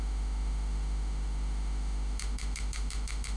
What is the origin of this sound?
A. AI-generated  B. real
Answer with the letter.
A